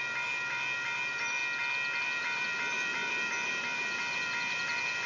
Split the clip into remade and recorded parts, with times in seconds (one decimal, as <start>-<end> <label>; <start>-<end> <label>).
0.0-1.4 remade; 1.4-2.0 recorded; 2.0-5.1 remade